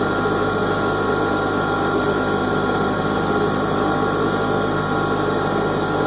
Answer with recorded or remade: recorded